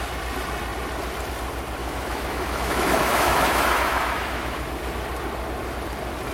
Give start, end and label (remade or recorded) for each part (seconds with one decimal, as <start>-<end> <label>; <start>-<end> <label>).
0.0-1.8 recorded; 1.8-4.7 remade; 4.7-6.3 recorded